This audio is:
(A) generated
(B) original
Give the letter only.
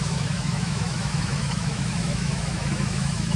A